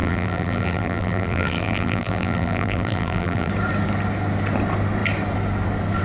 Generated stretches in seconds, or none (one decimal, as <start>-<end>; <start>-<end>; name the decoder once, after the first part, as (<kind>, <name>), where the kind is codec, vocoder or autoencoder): 0.0-3.5 (vocoder, BigVGAN v2)